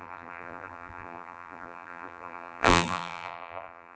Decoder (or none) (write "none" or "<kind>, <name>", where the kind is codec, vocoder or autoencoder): vocoder, BigVGAN v2